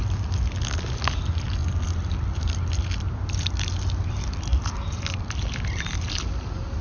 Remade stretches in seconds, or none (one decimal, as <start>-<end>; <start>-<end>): 1.6-3.7